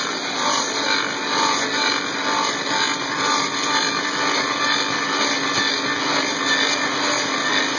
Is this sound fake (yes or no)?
no